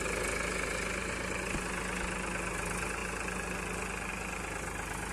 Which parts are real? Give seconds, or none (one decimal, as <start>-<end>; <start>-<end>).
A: 0.0-5.1